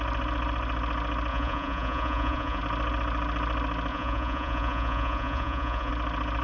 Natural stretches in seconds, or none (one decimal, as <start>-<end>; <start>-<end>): 0.0-1.3; 2.6-3.9; 5.9-6.4